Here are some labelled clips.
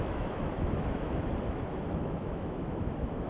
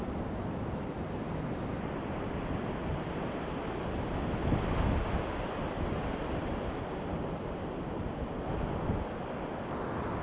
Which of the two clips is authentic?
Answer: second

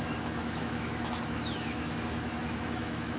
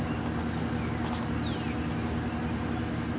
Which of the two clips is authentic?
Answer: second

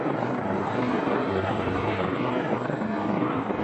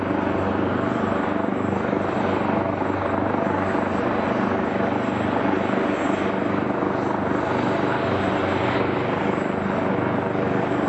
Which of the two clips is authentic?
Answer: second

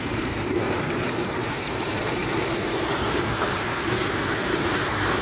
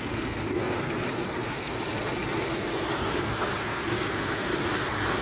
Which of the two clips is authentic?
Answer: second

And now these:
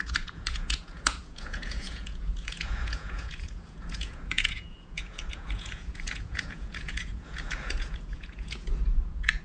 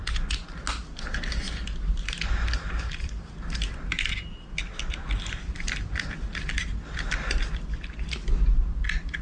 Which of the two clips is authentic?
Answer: second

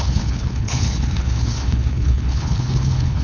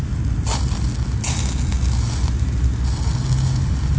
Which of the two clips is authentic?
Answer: second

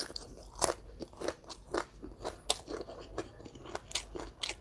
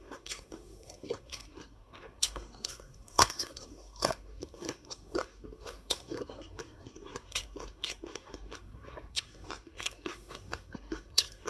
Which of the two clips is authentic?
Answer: first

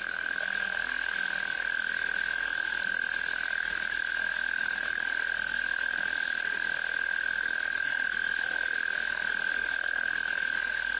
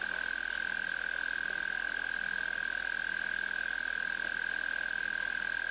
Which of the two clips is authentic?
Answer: second